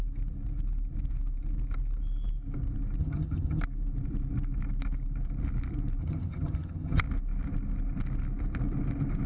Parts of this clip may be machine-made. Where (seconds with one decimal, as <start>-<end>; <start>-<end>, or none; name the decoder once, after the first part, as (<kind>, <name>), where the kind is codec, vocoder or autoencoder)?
3.0-3.6 (vocoder, HiFi-GAN); 6.0-7.0